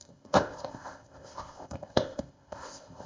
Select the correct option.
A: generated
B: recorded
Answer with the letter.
A